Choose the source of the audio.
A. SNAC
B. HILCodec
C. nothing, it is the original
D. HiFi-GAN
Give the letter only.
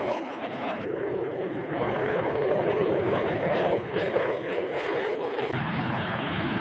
B